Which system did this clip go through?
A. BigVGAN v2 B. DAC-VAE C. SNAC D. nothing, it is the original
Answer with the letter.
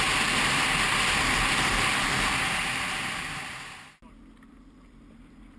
D